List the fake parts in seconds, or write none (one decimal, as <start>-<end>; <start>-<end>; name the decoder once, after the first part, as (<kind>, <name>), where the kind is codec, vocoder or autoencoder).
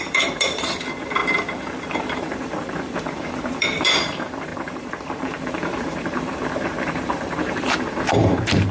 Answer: 0.0-1.2 (vocoder, BigVGAN v2); 2.2-8.7